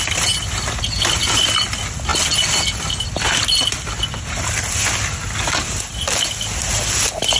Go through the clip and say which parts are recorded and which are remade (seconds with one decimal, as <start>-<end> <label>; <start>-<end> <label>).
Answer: 0.0-7.4 recorded